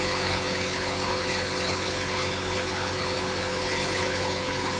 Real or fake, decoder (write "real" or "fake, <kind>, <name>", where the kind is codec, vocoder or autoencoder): fake, codec, HILCodec